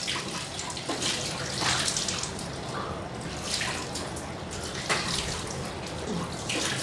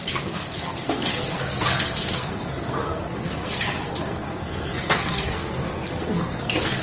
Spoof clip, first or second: second